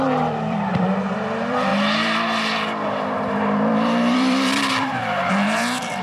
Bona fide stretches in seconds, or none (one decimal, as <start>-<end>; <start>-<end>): none